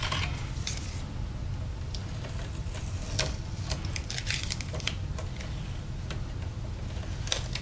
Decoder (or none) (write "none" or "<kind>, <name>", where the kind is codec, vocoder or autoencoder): none